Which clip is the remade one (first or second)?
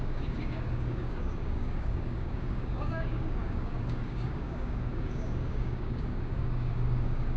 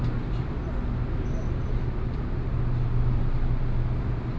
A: first